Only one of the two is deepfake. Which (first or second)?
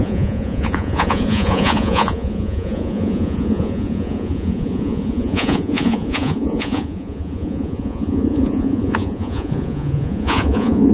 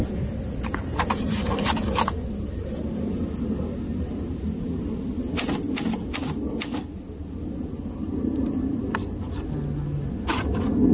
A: first